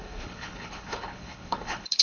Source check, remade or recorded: remade